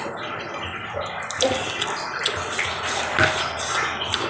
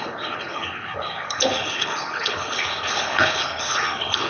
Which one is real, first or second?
first